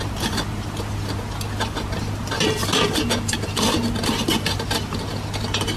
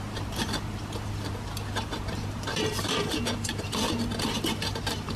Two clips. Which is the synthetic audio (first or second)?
second